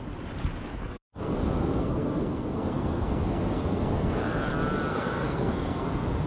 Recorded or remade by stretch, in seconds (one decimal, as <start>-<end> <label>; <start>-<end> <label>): 0.0-0.7 recorded; 0.7-4.5 remade; 4.5-4.9 recorded; 4.9-6.3 remade